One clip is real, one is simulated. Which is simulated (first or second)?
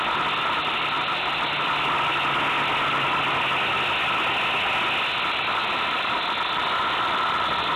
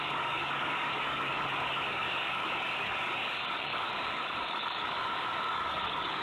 second